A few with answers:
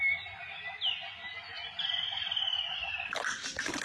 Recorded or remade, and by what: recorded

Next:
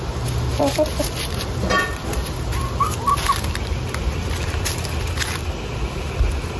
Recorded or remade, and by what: recorded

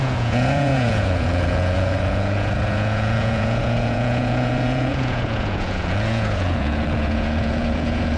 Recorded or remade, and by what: remade, vocoder, Vocos